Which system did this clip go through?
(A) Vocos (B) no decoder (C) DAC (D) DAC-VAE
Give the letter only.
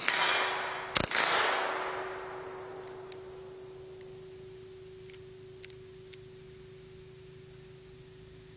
B